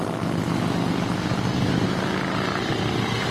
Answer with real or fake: real